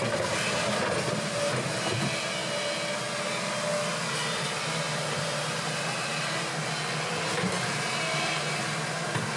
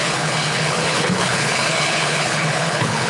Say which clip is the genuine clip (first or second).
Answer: first